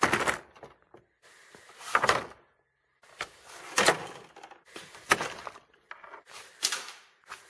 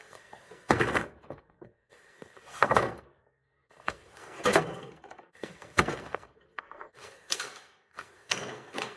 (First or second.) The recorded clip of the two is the first